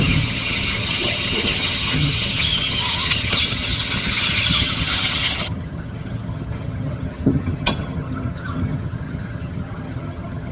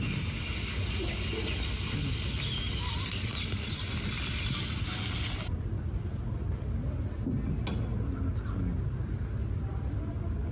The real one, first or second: second